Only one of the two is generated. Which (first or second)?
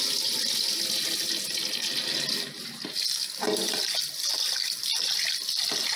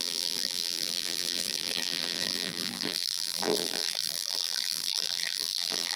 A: second